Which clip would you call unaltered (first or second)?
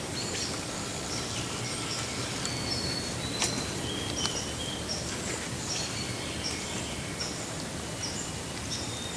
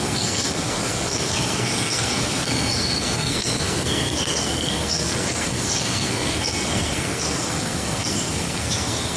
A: first